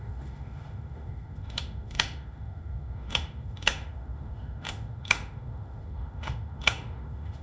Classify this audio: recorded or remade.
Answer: remade